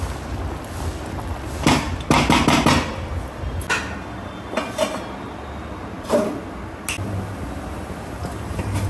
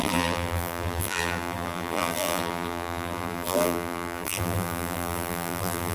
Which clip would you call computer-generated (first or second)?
second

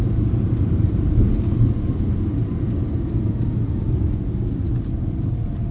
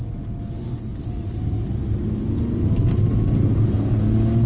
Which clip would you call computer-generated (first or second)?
first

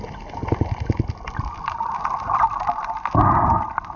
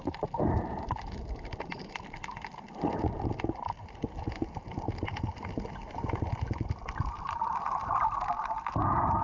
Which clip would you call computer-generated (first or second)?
second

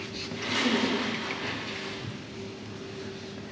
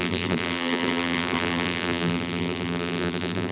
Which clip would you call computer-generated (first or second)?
second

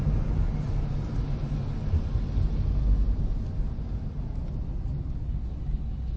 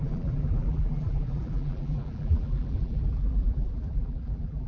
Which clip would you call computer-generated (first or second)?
second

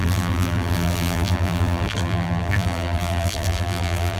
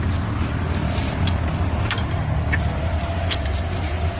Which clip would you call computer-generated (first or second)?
first